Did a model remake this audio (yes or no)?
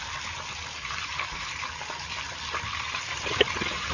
no